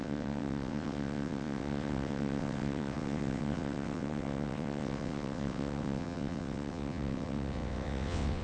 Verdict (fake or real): fake